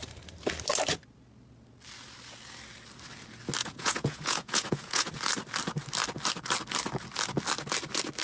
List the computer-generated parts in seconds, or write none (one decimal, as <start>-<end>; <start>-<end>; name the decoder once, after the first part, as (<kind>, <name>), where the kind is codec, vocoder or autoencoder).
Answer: 3.6-5.1 (vocoder, Vocos)